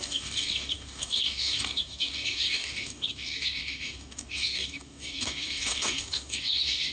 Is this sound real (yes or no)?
no